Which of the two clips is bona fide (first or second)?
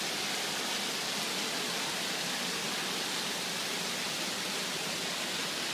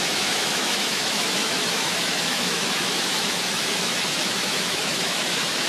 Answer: first